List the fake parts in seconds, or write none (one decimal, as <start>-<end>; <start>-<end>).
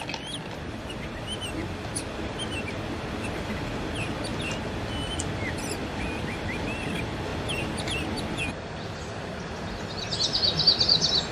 none